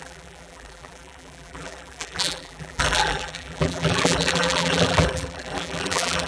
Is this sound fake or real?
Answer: fake